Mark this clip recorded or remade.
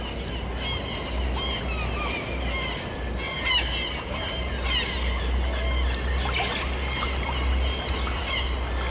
recorded